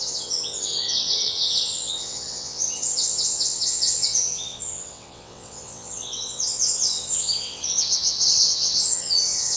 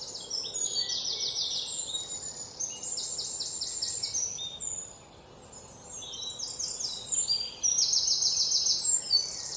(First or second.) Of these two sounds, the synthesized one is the first